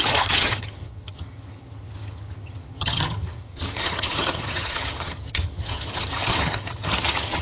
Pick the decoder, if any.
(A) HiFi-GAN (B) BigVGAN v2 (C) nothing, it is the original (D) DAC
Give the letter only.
A